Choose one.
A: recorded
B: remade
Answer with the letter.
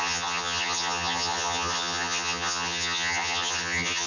B